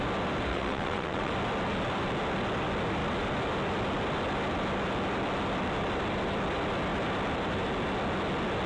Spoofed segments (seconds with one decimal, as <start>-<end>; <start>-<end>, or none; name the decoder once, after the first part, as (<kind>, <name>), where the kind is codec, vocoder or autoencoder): 0.5-1.3 (vocoder, WaveNeXt)